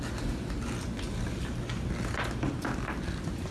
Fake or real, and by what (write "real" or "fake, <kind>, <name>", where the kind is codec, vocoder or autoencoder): real